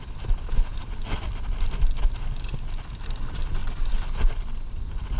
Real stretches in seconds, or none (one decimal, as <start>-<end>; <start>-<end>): 0.0-5.2